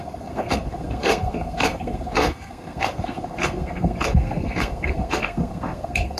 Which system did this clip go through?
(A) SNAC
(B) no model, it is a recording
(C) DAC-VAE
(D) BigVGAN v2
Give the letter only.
A